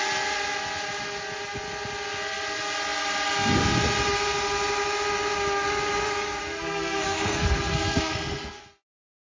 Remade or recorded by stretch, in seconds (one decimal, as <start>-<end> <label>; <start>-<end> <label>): 0.0-6.4 recorded; 6.4-8.6 remade; 8.6-9.2 recorded

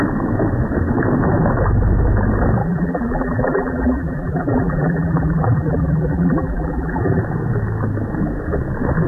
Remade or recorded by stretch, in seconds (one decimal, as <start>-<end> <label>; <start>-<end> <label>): 0.0-2.6 recorded; 2.6-7.2 remade; 7.2-9.1 recorded

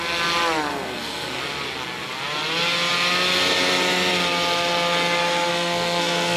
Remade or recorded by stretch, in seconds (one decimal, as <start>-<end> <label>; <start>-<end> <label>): 0.0-0.7 recorded; 0.7-1.4 remade; 1.4-5.5 recorded; 5.5-6.4 remade

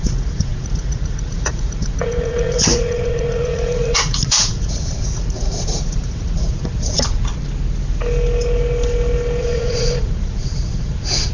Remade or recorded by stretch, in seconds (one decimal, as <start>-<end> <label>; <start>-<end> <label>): 0.0-7.3 remade; 7.3-9.4 recorded; 9.4-11.3 remade

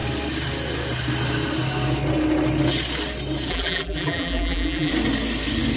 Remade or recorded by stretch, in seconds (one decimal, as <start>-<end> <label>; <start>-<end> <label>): 0.0-3.5 recorded; 3.5-4.9 remade; 4.9-5.8 recorded